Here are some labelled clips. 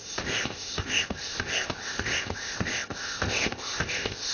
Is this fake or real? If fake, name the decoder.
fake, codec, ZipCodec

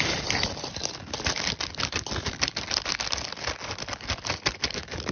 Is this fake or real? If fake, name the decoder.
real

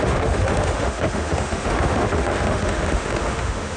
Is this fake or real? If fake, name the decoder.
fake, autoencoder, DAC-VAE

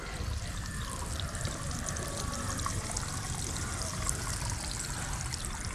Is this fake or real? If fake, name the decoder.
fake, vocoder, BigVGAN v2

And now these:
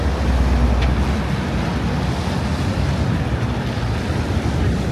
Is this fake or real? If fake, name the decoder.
real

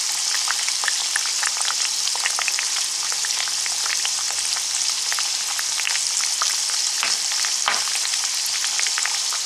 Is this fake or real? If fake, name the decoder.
real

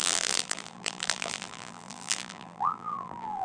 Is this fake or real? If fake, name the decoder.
fake, vocoder, BigVGAN v2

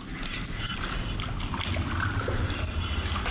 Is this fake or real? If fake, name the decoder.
real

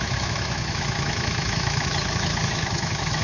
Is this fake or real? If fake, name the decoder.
fake, autoencoder, DAC-VAE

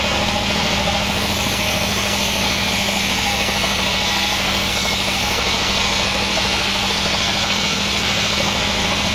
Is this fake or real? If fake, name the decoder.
fake, codec, SNAC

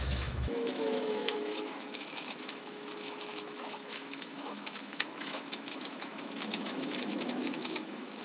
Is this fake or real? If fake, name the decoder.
fake, autoencoder, DAC-VAE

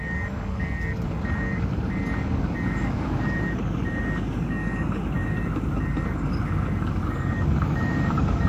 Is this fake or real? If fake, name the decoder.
fake, codec, DAC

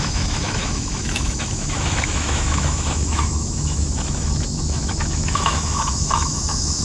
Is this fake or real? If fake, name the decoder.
fake, autoencoder, DAC-VAE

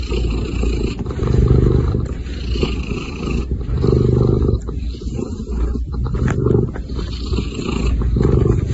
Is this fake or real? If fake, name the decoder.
fake, vocoder, BigVGAN v2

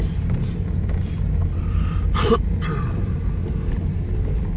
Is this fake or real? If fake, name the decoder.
real